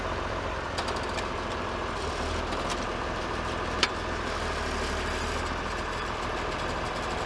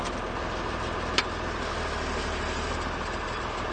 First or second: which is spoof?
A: first